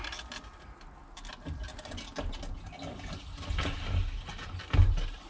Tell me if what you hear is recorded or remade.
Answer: recorded